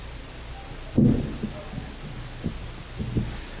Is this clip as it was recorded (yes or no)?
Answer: yes